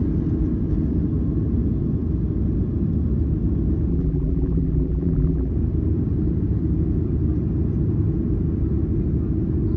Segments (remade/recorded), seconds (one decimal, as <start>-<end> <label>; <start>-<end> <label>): 0.0-3.9 recorded; 3.9-5.5 remade; 5.5-9.8 recorded